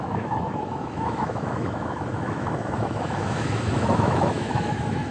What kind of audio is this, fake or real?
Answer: fake